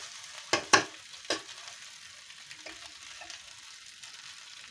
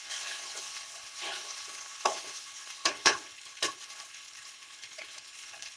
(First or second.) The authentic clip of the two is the first